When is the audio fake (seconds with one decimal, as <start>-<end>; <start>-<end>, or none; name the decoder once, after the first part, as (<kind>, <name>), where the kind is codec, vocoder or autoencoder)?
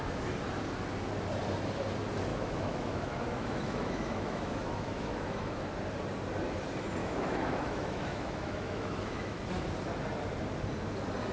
2.3-5.7 (autoencoder, DAC-VAE); 7.0-9.4